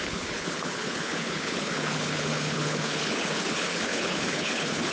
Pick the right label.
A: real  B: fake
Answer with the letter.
B